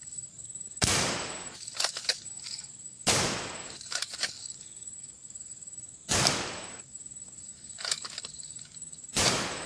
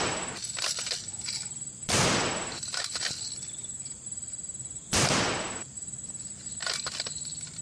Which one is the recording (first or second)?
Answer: second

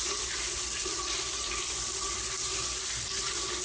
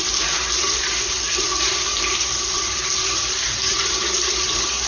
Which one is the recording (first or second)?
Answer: first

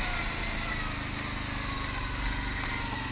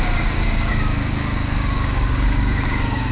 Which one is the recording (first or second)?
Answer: first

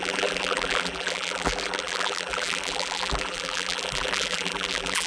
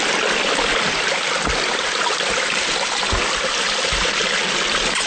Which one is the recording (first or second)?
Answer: second